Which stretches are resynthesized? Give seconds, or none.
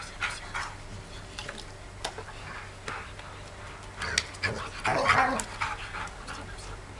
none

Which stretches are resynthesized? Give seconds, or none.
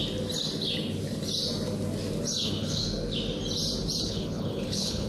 2.4-2.8 (codec, HILCodec); 4.0-5.1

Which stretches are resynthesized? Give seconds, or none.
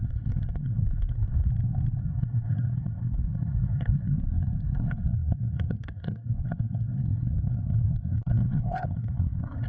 0.0-1.5 (codec, SNAC); 2.0-9.7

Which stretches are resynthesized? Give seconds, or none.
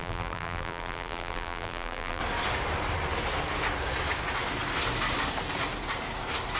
0.0-2.2 (vocoder, BigVGAN v2)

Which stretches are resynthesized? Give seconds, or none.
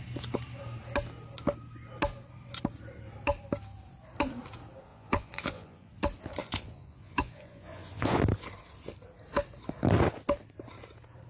4.9-5.9 (vocoder, Vocos); 6.4-8.2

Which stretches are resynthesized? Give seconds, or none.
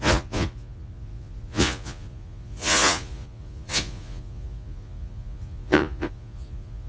0.0-6.9 (vocoder, Vocos)